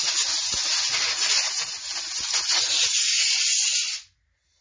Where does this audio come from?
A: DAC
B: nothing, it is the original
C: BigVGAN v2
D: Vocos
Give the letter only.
B